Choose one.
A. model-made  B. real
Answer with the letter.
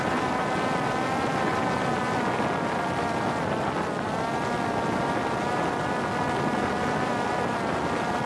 B